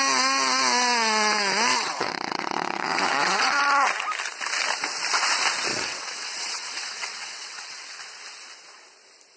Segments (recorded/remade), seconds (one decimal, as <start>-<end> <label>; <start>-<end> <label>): 0.0-1.7 recorded; 1.7-3.6 remade; 3.6-5.7 recorded; 5.7-8.0 remade; 8.0-9.4 recorded